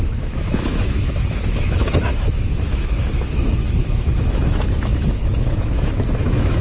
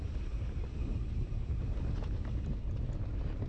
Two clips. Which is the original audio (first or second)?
second